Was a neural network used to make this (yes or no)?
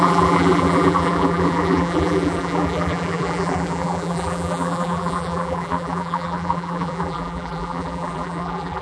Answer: yes